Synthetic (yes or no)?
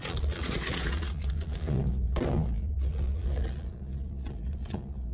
yes